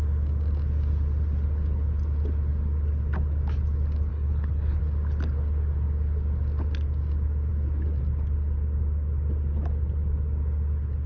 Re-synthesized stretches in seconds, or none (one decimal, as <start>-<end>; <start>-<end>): 4.1-4.8

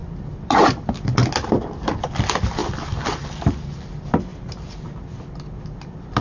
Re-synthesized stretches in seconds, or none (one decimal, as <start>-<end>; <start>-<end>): 0.0-2.6; 3.9-4.3; 5.6-6.2

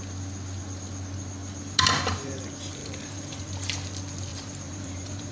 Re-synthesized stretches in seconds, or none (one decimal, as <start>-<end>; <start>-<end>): 1.4-2.4; 2.8-3.4; 4.3-5.3

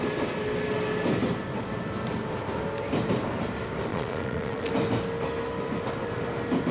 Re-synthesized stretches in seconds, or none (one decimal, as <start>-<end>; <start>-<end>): 3.9-4.7

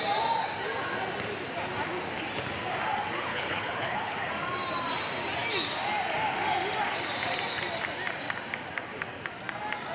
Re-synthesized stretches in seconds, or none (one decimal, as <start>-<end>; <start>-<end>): 3.3-4.3

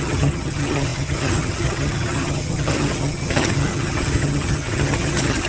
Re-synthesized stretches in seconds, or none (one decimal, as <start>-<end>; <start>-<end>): 0.0-5.5

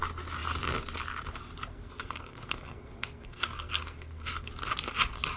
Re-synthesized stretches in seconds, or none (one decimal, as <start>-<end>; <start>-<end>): 1.7-4.5

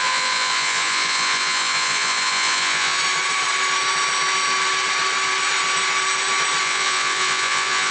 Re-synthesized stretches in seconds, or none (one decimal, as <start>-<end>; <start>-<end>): 0.0-3.0; 6.6-7.9